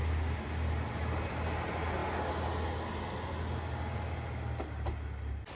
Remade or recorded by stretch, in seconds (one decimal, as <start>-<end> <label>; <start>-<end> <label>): 0.0-5.6 recorded

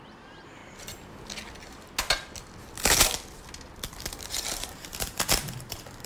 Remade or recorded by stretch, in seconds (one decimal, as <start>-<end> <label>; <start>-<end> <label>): 0.0-0.6 remade; 0.6-4.3 recorded; 4.3-6.1 remade

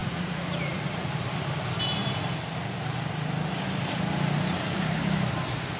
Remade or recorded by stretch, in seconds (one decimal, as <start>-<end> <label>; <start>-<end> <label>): 0.0-1.1 remade; 1.1-5.8 recorded

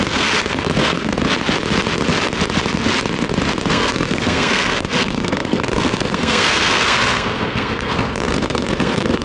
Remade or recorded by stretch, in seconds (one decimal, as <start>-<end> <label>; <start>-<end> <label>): 0.0-1.1 remade; 1.1-3.7 recorded; 3.7-9.2 remade

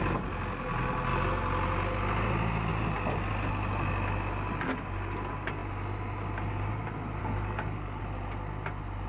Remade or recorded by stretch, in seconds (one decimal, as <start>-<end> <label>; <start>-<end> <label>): 0.0-7.2 recorded; 7.2-8.0 remade; 8.0-9.1 recorded

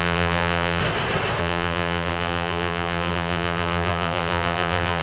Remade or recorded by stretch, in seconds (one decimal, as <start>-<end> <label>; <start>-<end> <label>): 0.0-0.8 remade; 0.8-1.4 recorded; 1.4-5.0 remade

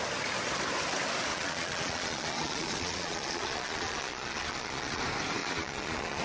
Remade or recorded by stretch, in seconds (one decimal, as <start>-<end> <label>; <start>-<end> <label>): 0.0-1.3 recorded; 1.3-5.0 remade; 5.0-5.4 recorded; 5.4-6.2 remade